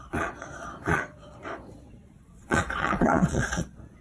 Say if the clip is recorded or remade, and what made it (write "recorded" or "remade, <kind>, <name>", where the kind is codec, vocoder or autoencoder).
remade, vocoder, Vocos